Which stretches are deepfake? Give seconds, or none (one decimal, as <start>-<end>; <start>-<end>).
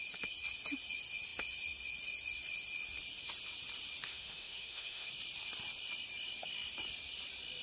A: 4.1-5.1